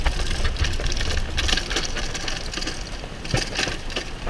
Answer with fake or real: real